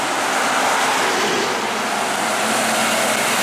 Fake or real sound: real